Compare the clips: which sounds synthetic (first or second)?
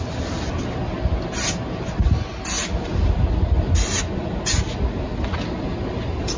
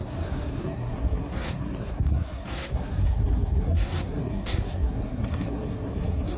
second